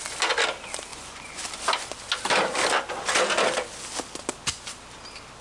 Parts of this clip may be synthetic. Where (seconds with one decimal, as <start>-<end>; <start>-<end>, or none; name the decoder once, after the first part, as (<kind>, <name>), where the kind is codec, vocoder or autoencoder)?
0.9-1.4 (vocoder, Vocos)